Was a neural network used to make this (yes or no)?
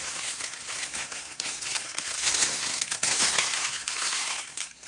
yes